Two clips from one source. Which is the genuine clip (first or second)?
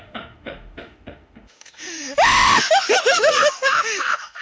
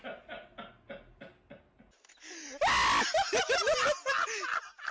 second